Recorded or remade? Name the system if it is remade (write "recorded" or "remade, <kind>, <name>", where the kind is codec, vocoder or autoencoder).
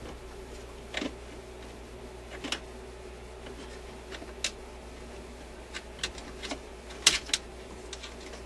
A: recorded